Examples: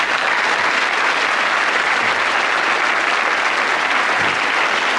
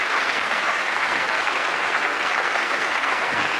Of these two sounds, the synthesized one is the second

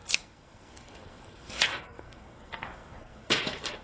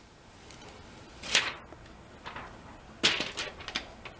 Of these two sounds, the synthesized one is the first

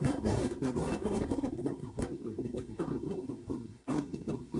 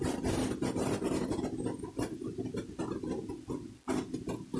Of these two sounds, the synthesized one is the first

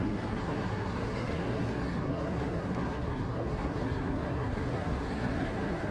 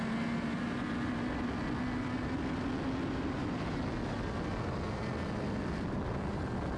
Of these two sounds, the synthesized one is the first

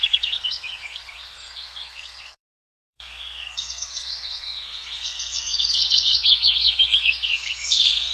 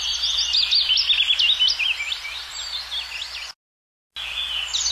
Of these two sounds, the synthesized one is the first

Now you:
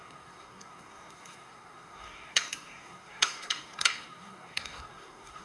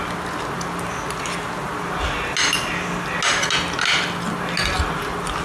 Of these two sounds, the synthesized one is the first